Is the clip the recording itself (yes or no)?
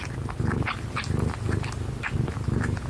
yes